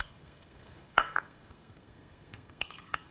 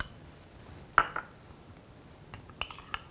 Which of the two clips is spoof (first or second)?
first